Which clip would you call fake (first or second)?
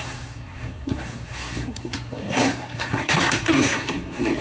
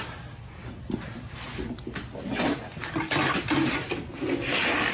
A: first